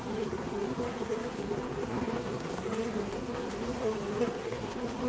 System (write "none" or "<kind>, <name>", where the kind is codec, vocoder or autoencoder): codec, SNAC